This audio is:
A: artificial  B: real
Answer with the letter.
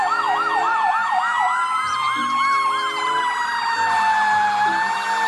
B